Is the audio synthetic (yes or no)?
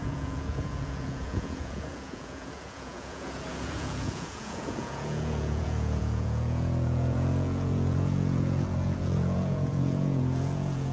yes